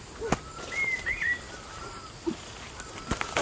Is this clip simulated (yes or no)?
no